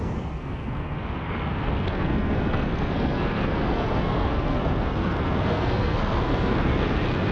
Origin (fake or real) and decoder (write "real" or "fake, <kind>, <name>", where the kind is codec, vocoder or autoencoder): fake, codec, SNAC